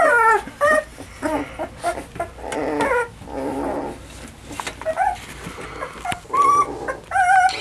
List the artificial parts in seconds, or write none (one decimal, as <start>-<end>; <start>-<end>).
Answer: none